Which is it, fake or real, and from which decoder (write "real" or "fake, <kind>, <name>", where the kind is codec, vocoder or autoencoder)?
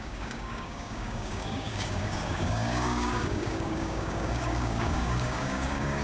fake, codec, DAC